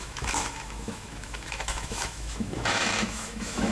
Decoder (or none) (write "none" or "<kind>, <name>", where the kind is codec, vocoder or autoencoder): autoencoder, DAC-VAE